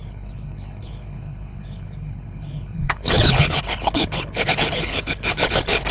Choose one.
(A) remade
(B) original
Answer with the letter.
A